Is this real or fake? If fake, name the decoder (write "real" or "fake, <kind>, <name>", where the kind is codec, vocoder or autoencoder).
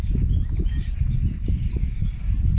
real